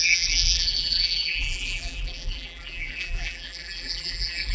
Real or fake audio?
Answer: fake